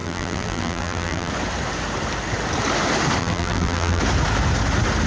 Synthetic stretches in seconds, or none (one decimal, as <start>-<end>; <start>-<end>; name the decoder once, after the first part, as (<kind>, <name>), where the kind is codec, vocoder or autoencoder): 0.0-1.3 (vocoder, BigVGAN v2); 3.2-4.0